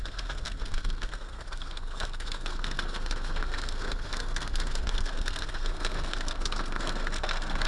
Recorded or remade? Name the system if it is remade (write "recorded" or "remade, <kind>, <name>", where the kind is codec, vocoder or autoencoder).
remade, codec, SNAC